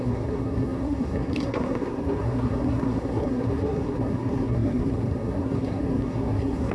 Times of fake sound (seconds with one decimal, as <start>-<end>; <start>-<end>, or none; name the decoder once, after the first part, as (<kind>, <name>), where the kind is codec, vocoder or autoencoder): 0.0-6.7 (codec, SNAC)